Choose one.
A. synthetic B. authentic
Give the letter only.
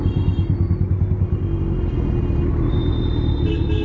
B